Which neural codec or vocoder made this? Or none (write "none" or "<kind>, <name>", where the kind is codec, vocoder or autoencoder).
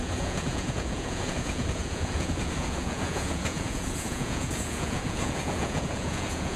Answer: vocoder, Vocos